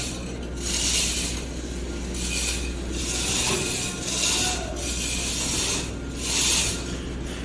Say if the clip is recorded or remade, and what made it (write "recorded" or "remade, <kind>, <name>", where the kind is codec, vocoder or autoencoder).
recorded